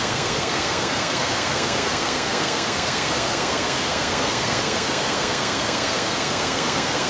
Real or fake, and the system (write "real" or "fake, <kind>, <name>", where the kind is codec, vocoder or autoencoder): fake, codec, SNAC